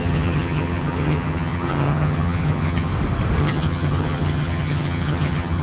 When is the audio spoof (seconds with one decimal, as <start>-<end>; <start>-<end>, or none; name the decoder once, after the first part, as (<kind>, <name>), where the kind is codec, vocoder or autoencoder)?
0.0-2.9 (vocoder, HiFi-GAN); 3.4-5.6